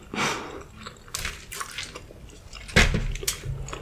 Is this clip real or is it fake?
real